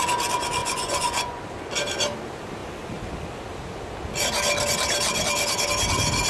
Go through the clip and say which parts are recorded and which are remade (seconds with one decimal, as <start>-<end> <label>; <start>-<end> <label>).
0.0-0.6 recorded; 0.6-1.4 remade; 1.4-6.3 recorded